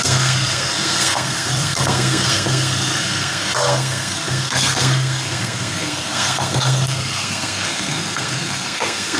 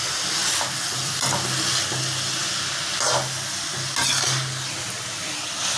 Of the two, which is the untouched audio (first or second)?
second